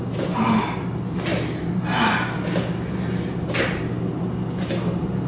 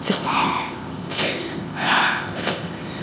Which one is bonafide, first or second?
first